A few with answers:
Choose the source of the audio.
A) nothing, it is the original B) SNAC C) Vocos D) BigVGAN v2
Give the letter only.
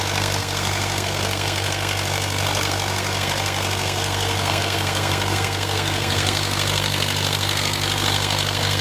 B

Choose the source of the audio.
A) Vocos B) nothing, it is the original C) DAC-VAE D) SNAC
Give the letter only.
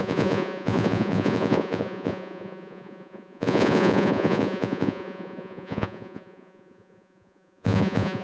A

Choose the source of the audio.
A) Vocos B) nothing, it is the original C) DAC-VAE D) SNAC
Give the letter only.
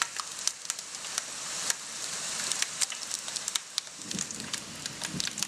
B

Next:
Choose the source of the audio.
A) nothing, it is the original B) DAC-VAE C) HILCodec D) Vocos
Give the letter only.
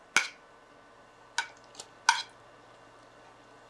A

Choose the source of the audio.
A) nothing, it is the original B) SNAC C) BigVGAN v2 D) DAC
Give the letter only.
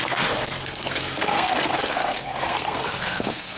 B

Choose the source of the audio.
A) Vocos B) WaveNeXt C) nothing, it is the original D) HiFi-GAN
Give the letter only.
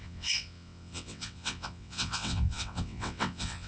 B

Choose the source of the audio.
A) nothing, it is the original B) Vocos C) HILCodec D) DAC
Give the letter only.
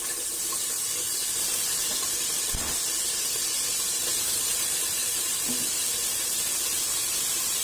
A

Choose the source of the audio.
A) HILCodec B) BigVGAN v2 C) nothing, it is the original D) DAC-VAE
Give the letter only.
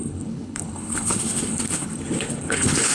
A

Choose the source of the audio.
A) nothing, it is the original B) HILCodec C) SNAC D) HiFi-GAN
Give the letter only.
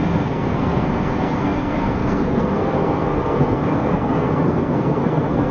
C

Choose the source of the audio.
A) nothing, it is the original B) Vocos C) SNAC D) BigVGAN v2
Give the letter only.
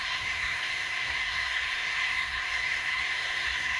C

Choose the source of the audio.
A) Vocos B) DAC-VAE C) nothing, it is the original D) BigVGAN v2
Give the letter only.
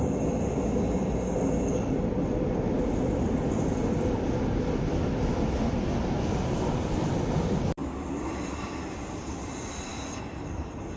C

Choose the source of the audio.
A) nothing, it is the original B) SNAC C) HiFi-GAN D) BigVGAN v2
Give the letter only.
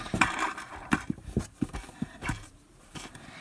D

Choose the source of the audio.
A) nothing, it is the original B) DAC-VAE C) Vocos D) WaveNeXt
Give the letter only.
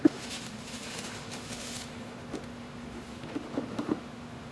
B